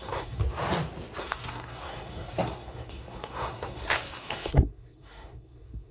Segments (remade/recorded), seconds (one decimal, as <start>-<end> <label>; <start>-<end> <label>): 0.0-0.4 remade; 0.4-1.2 recorded; 1.2-5.9 remade